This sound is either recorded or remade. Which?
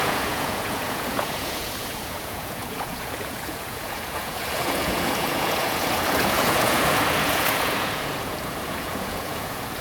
remade